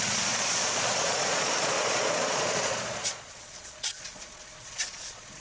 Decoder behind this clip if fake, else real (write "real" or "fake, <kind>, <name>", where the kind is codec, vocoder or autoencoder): fake, vocoder, Vocos